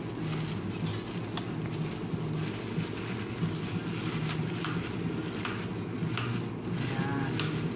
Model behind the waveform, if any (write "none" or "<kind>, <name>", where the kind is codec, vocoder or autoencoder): none